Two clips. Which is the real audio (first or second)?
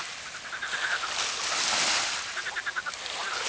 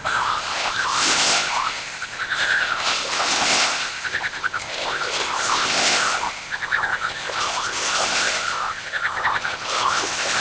first